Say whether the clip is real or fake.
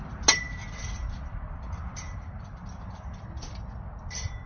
real